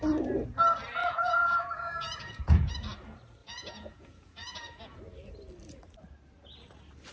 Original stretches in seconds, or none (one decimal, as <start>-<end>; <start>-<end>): 0.0-1.0; 2.7-3.4; 5.0-7.1